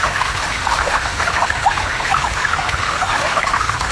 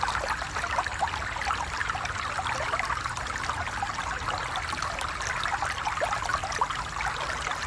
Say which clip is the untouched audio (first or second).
second